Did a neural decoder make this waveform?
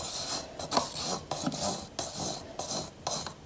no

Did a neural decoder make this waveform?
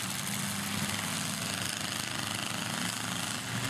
no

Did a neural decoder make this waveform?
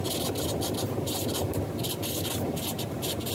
no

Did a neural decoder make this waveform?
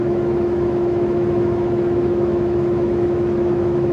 yes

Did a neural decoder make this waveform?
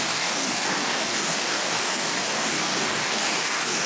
yes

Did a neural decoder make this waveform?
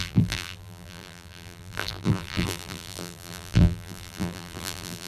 yes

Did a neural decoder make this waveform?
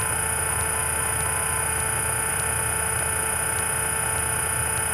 no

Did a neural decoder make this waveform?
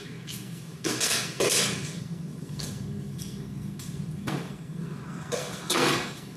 yes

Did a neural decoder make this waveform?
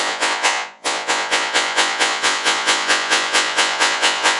yes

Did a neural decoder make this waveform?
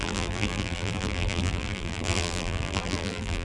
yes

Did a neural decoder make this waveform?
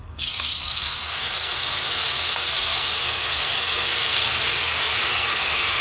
yes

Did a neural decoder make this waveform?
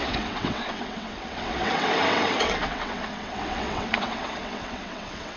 yes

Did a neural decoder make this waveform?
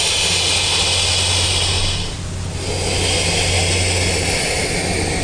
no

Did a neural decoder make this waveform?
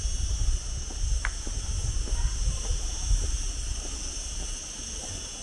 no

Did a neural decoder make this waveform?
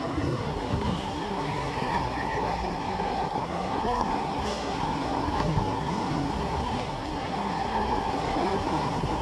yes